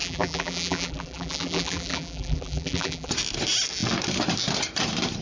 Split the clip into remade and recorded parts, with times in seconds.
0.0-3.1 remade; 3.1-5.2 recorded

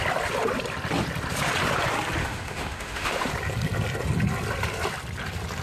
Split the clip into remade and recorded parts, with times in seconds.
0.0-2.2 recorded; 2.2-3.3 remade; 3.3-5.6 recorded

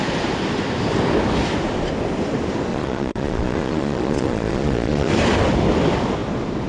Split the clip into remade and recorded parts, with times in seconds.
0.0-2.7 recorded; 2.7-5.1 remade; 5.1-6.7 recorded

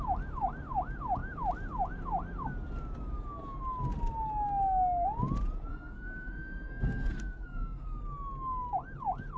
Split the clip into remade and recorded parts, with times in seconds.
0.0-5.7 recorded; 5.7-8.0 remade; 8.0-9.4 recorded

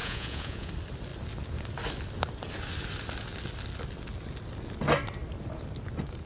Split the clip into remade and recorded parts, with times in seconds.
0.0-0.7 remade; 0.7-6.3 recorded

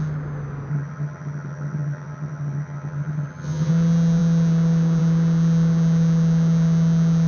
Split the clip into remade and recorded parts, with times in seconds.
0.0-0.7 recorded; 0.7-3.7 remade; 3.7-7.3 recorded

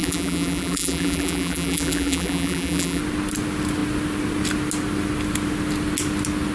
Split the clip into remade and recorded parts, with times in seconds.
0.0-3.0 remade; 3.0-6.5 recorded

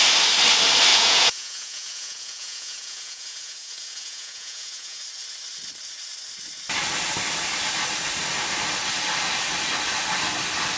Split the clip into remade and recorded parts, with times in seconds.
0.0-0.9 recorded; 0.9-5.0 remade; 5.0-10.8 recorded